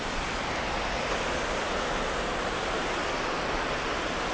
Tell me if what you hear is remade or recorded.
recorded